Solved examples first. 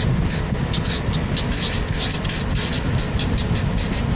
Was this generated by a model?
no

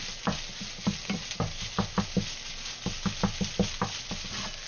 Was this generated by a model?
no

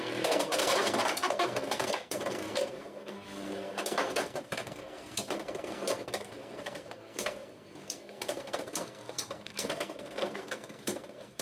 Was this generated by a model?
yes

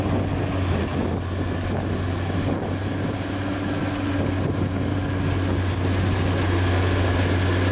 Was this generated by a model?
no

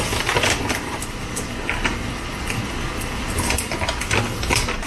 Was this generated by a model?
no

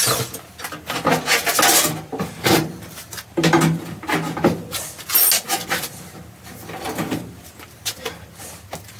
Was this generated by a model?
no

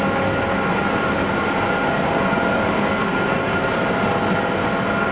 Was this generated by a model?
no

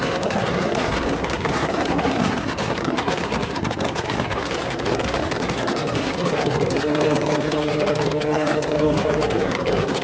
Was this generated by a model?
yes